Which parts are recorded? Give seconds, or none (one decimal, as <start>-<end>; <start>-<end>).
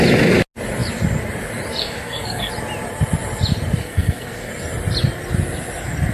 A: 0.0-1.8; 2.5-3.8; 4.5-6.1